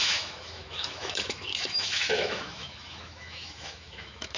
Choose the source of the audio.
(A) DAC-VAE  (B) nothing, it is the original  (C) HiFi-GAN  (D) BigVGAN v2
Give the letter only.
A